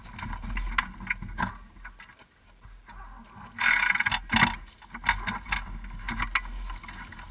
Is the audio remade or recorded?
recorded